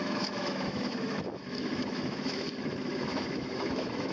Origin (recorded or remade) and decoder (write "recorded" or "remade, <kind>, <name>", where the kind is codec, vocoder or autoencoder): remade, autoencoder, DAC-VAE